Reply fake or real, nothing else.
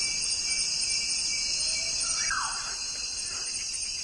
real